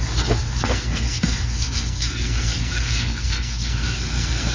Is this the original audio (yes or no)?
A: no